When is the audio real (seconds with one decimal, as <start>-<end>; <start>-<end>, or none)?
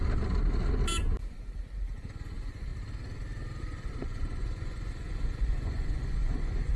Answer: 0.0-2.1; 2.7-3.6